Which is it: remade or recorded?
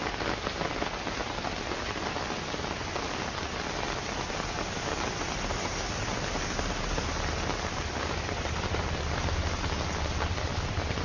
recorded